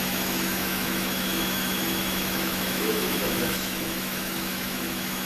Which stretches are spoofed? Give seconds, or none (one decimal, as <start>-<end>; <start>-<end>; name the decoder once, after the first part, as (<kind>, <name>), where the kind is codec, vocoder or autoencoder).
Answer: 0.0-5.3 (autoencoder, DAC-VAE)